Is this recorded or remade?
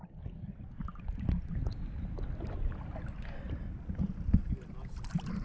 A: recorded